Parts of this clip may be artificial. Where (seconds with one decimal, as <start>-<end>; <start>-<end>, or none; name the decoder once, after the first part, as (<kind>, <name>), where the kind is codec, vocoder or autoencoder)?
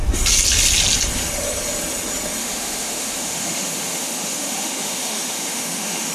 2.4-6.1 (autoencoder, DAC-VAE)